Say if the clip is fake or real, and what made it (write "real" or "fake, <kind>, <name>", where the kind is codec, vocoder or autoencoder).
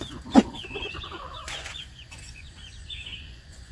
fake, vocoder, Vocos